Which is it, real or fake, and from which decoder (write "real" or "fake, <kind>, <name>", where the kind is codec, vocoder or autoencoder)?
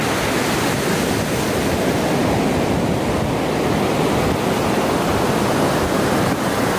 real